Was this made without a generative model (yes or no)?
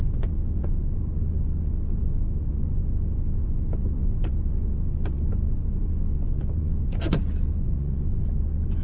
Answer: no